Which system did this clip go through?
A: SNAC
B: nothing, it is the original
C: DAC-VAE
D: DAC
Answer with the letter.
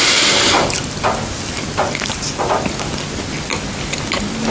B